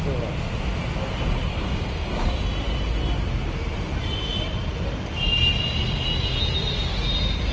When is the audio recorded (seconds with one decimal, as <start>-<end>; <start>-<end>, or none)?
0.0-1.5; 2.3-7.5